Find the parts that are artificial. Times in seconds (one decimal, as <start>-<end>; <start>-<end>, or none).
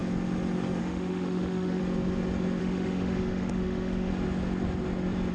0.8-1.8; 2.6-4.1